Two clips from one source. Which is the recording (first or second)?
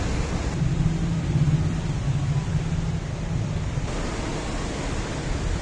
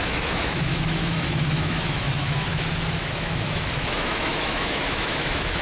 first